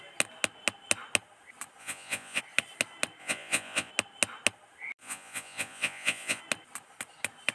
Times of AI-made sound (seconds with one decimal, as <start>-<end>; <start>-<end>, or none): 1.8-2.4; 3.2-3.9; 5.0-6.4